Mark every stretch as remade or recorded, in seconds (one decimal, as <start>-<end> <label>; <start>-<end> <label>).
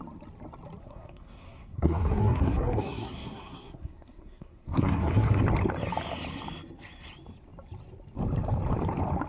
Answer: 0.0-0.8 recorded; 0.8-5.4 remade; 5.4-9.3 recorded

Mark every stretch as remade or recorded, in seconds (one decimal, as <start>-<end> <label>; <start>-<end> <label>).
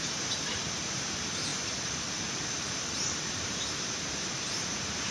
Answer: 0.0-1.5 remade; 1.5-2.4 recorded; 2.4-5.1 remade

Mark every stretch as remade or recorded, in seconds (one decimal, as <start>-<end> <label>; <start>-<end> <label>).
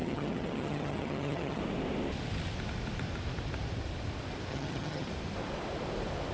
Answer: 0.0-1.6 remade; 1.6-4.5 recorded; 4.5-5.1 remade; 5.1-6.3 recorded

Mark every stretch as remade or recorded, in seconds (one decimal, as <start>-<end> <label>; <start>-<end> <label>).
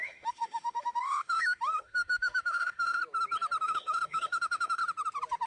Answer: 0.0-3.0 remade; 3.0-3.6 recorded; 3.6-4.8 remade; 4.8-5.5 recorded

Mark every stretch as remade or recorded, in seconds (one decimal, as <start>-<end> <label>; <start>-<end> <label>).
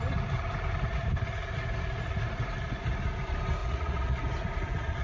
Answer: 0.0-3.6 recorded; 3.6-4.2 remade; 4.2-5.0 recorded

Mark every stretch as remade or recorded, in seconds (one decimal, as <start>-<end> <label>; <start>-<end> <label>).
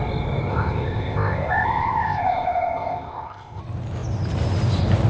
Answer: 0.0-0.5 recorded; 0.5-3.6 remade; 3.6-5.1 recorded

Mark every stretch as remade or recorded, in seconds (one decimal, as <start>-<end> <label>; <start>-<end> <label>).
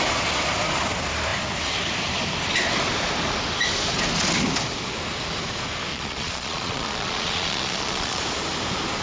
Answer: 0.0-5.9 recorded; 5.9-8.2 remade; 8.2-9.0 recorded